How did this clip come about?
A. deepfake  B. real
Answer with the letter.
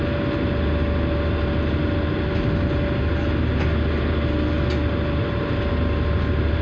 B